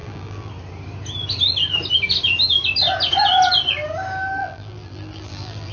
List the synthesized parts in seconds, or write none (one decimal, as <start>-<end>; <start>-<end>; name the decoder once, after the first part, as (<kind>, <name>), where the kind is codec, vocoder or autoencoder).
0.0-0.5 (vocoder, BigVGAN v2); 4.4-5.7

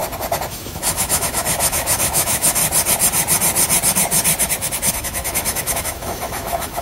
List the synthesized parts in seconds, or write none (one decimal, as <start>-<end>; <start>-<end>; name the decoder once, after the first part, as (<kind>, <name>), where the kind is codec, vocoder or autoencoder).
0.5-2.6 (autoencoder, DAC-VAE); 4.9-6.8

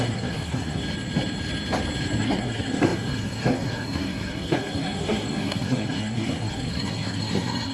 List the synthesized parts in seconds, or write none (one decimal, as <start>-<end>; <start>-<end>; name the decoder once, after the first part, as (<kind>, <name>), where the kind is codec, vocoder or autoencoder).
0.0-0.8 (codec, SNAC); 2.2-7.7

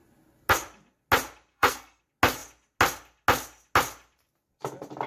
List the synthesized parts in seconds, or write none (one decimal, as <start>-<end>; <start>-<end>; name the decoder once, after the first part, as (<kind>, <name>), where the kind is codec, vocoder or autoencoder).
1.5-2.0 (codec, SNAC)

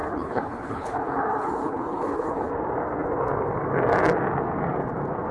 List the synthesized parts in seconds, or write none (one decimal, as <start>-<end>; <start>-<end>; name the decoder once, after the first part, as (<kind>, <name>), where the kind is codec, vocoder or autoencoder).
0.0-2.5 (codec, HILCodec)

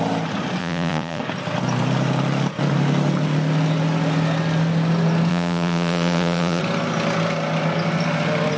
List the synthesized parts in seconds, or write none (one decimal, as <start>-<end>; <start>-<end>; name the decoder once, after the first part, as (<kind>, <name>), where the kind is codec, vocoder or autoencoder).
0.6-1.2 (vocoder, Vocos); 5.3-6.6

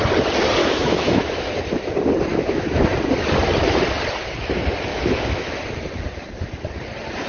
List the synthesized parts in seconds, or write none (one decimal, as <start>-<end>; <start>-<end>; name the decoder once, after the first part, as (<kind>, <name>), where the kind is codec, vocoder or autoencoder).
0.6-1.5 (autoencoder, DAC-VAE); 2.3-2.9; 4.9-5.6